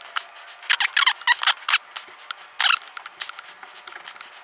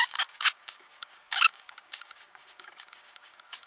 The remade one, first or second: second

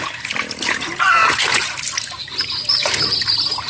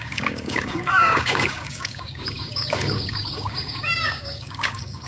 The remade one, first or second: second